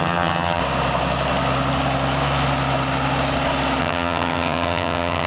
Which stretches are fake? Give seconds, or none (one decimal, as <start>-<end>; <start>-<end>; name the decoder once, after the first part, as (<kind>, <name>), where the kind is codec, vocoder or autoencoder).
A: 0.0-0.6 (vocoder, HiFi-GAN); 3.8-5.3